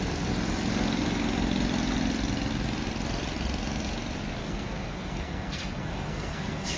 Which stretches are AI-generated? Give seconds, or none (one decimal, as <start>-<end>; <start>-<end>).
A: 4.4-6.8